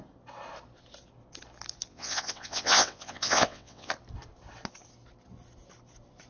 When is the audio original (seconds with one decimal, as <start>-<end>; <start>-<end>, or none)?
0.0-1.9; 3.9-6.3